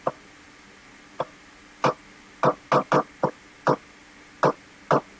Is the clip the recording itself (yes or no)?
yes